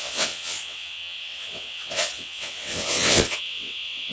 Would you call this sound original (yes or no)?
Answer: no